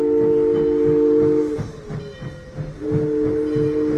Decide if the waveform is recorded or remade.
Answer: recorded